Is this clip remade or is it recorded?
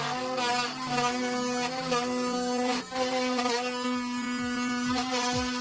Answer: recorded